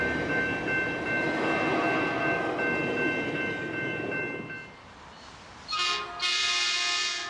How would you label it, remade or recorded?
recorded